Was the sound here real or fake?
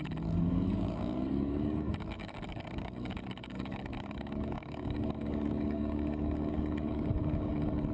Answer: fake